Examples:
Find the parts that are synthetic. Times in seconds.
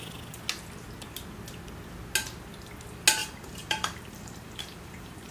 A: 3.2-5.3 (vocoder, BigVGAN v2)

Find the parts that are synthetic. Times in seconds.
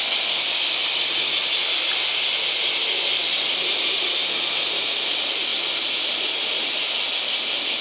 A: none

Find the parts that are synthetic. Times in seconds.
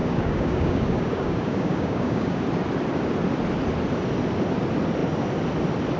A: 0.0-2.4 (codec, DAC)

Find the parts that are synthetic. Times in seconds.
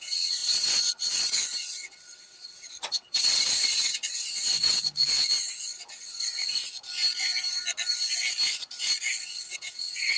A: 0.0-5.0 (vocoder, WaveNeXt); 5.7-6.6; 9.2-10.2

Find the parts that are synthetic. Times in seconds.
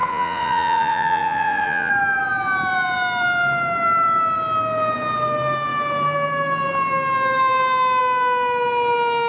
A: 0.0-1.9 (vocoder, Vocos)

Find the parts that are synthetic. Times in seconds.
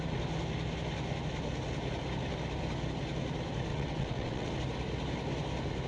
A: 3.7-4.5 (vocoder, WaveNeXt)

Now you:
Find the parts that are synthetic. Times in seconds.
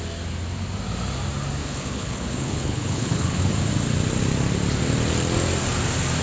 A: 1.6-3.5 (codec, HILCodec)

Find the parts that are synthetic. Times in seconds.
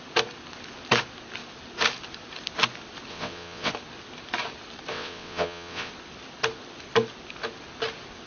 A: 3.1-3.7 (vocoder, WaveNeXt); 4.9-5.9